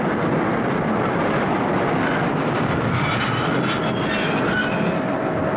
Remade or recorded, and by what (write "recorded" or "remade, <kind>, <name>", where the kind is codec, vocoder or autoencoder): recorded